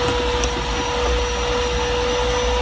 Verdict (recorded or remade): recorded